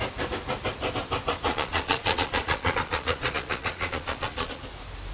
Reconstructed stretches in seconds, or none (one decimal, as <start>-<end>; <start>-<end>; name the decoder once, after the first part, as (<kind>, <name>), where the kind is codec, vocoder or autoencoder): 1.5-4.6 (vocoder, Vocos)